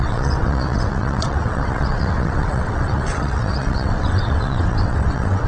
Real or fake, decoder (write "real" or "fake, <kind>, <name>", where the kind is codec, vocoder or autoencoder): fake, vocoder, WaveNeXt